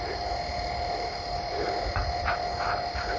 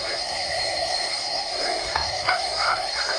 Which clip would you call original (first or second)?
first